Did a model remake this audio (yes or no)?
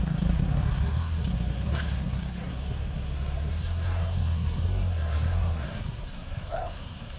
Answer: yes